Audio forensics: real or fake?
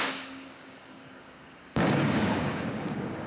fake